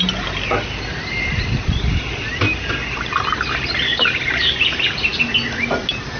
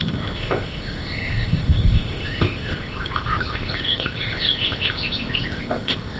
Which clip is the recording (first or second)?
first